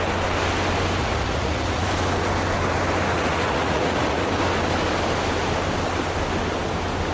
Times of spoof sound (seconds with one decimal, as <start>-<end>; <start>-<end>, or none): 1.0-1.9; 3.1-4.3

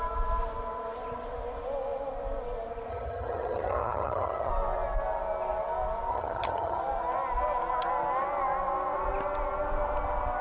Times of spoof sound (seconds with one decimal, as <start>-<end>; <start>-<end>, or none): 2.9-4.5; 6.1-6.8

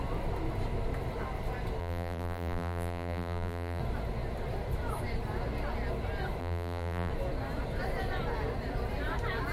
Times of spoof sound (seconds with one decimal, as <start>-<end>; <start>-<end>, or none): 1.8-3.8; 6.4-7.1